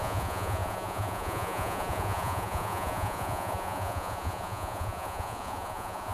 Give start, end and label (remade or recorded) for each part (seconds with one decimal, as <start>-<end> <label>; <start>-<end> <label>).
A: 0.0-6.1 remade